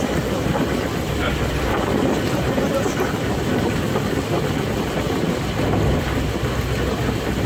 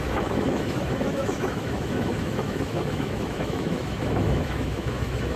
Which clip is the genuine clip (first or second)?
first